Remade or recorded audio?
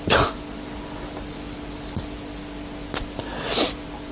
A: recorded